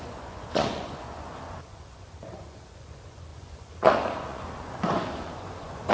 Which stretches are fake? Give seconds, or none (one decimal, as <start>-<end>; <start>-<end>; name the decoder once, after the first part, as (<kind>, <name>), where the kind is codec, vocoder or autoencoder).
0.0-5.9 (vocoder, Vocos)